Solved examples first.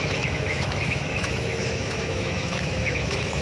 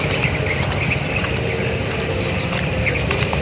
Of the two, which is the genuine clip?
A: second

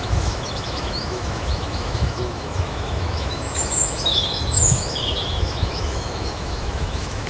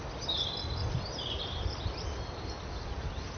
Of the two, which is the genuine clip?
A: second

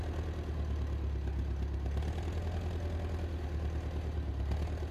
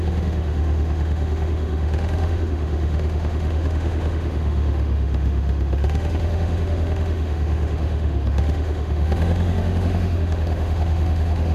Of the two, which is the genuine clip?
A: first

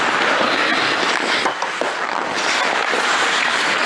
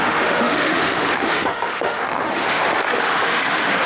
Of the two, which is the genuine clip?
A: first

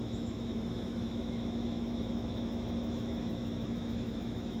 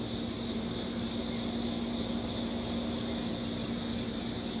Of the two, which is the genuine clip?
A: second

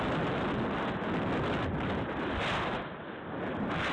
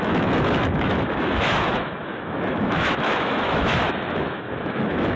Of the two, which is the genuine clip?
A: first